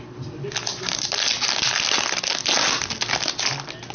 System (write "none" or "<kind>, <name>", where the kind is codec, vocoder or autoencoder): none